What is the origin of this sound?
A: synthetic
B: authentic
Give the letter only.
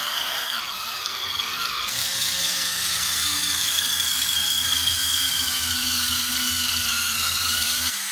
A